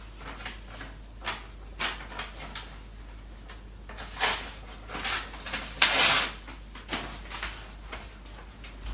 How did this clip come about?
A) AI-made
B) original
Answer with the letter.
B